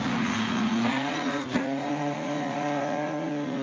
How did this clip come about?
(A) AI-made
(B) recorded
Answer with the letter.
A